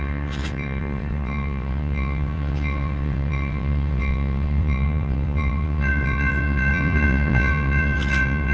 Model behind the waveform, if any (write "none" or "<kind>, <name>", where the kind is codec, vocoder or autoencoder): vocoder, WaveNeXt